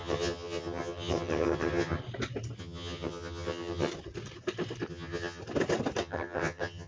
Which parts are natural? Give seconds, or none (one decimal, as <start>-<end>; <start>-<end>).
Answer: 2.0-2.6; 3.9-4.9; 5.4-6.0

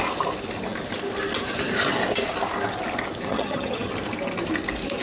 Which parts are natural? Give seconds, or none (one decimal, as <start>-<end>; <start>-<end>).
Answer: 0.0-3.3; 3.9-5.0